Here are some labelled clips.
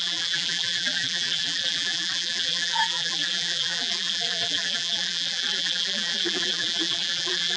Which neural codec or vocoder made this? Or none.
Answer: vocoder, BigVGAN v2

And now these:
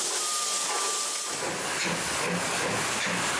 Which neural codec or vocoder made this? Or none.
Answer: none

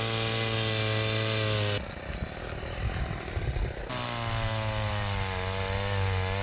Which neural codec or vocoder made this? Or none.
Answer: none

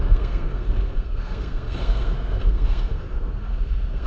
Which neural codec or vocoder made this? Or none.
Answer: codec, SNAC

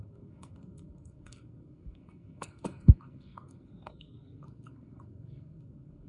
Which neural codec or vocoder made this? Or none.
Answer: codec, SNAC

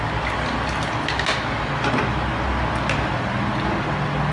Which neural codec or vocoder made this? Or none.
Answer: none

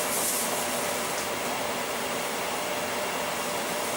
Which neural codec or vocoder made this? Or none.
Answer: none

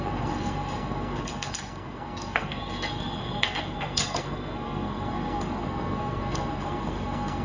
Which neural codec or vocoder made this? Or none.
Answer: codec, SNAC